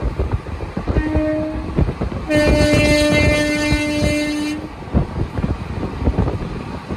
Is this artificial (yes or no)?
no